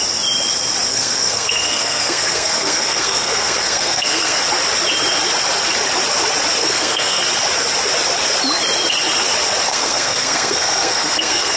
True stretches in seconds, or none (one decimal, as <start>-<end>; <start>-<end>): 0.0-0.9; 4.4-6.6; 7.2-9.7